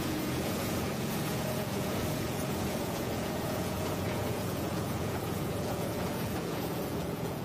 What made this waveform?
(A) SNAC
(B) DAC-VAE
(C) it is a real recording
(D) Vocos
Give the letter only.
D